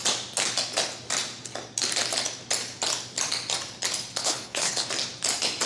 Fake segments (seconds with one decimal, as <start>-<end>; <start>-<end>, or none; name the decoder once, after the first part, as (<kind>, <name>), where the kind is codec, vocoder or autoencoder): 4.2-4.9 (codec, HILCodec)